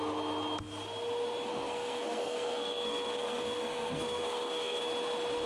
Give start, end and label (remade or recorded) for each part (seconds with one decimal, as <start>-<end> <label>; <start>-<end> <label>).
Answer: 0.0-1.5 recorded; 1.5-4.8 remade; 4.8-5.5 recorded